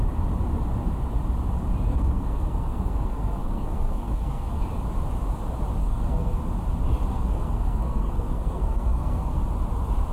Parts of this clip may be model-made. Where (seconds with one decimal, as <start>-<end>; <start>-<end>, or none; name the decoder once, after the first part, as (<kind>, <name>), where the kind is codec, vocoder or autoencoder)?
1.9-4.6 (codec, SNAC); 5.8-6.4; 7.1-9.4